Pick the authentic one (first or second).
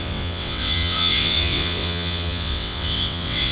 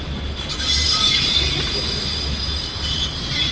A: second